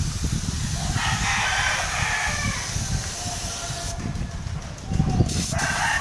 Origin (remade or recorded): recorded